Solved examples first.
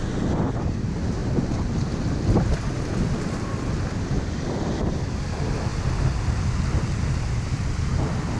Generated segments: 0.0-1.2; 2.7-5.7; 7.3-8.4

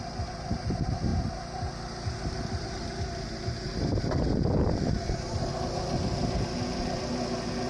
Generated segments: none